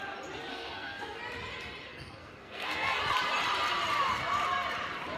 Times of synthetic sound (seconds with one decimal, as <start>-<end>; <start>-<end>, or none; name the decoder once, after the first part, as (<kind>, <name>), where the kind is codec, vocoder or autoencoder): 0.5-1.2 (codec, SNAC); 1.9-3.0